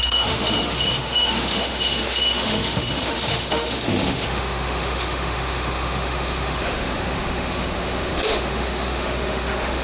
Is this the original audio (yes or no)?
no